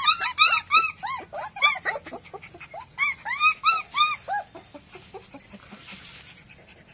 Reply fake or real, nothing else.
real